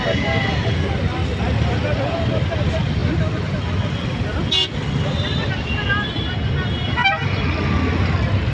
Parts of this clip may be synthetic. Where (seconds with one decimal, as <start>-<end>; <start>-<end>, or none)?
none